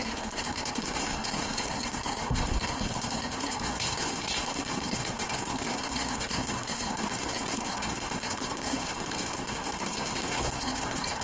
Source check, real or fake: fake